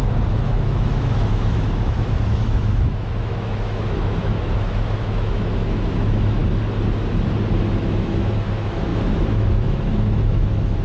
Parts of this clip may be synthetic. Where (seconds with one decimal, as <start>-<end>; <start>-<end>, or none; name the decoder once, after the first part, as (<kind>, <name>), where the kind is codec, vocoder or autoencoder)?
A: 0.0-6.4 (autoencoder, DAC-VAE); 7.8-10.8